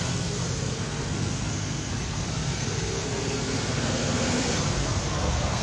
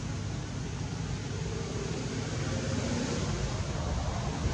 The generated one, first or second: first